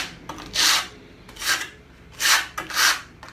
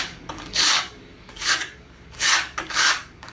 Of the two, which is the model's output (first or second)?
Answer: second